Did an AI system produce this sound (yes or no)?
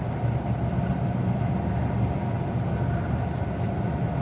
no